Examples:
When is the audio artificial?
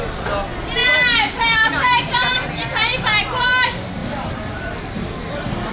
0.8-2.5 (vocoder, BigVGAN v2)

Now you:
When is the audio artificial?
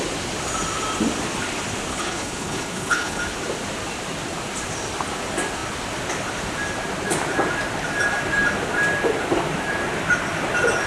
1.9-3.2 (codec, HILCodec)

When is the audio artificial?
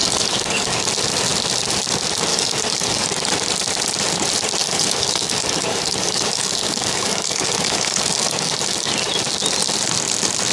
0.0-0.9 (codec, DAC); 2.3-3.3; 4.6-8.9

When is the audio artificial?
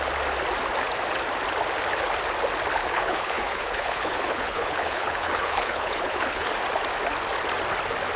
2.8-6.5 (codec, HILCodec)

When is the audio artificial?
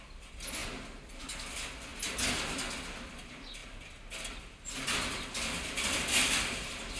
none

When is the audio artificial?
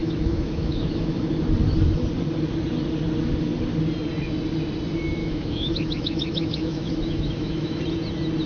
0.0-1.3 (autoencoder, DAC-VAE); 5.2-7.8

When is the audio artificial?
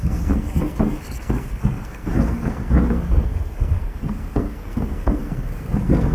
0.0-6.1 (codec, SNAC)